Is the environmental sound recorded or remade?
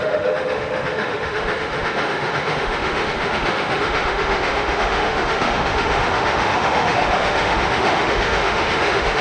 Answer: remade